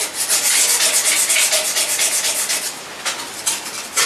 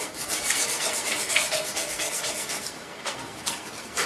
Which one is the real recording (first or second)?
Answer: first